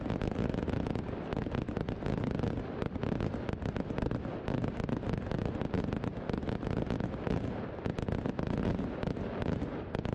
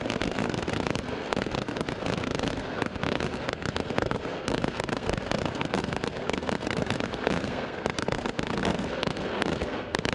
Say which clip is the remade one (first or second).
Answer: second